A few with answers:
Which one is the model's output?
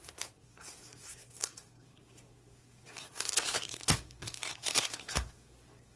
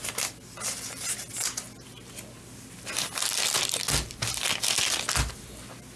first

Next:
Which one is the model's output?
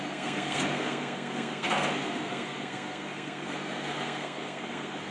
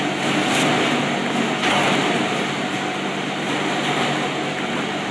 first